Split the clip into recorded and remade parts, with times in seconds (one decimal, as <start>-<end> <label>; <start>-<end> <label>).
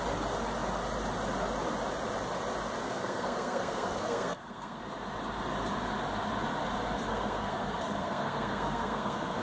0.0-2.8 recorded; 2.8-4.8 remade; 4.8-7.1 recorded; 7.1-9.4 remade